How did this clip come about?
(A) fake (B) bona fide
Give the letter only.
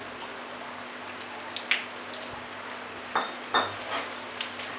B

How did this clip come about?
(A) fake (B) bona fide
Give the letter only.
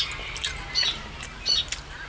B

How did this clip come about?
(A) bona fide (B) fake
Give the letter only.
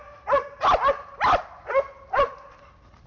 A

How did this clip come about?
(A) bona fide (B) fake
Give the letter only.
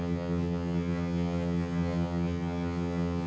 B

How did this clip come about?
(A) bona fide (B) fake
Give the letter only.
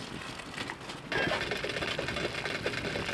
A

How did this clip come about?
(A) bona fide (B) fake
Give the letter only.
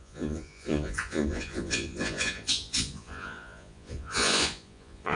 B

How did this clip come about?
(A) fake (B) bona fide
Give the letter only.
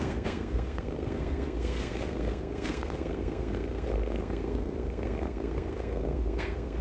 A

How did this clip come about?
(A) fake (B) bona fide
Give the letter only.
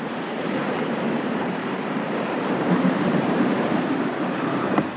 A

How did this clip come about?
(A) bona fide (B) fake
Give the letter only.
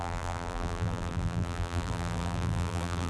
B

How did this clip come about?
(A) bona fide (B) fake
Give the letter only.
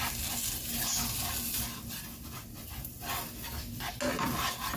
A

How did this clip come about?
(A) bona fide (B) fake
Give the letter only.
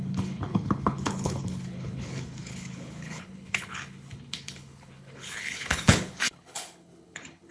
B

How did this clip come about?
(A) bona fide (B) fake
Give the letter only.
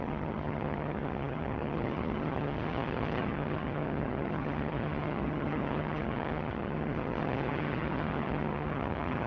B